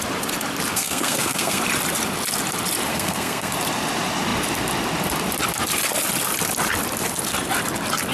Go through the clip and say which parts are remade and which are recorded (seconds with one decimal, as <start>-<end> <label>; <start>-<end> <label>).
0.0-0.7 recorded; 0.7-1.6 remade; 1.6-2.9 recorded; 2.9-3.5 remade; 3.5-8.1 recorded